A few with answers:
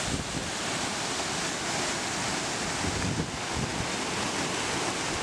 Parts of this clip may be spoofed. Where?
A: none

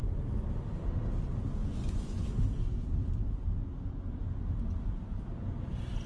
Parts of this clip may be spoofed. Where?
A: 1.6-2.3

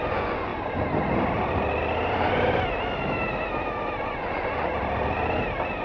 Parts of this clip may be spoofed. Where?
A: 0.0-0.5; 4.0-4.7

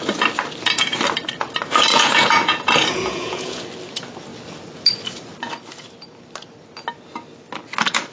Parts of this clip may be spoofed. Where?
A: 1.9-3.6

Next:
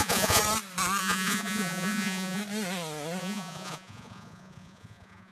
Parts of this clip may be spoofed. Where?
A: 0.0-0.4; 1.0-2.4; 3.2-5.3